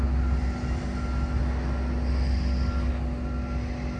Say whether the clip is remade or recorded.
recorded